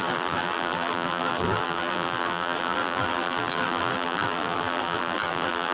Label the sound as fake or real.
fake